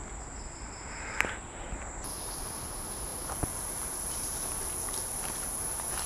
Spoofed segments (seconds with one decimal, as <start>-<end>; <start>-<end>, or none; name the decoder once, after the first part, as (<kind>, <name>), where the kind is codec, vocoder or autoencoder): 3.1-6.1 (vocoder, BigVGAN v2)